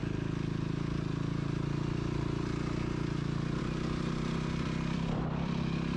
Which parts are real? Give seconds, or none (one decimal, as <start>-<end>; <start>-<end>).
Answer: 0.0-3.6